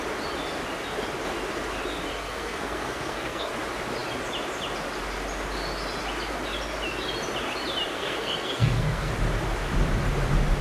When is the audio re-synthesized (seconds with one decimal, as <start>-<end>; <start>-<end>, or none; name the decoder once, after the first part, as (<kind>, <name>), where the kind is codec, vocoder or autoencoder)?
2.1-3.5 (codec, SNAC); 7.9-9.1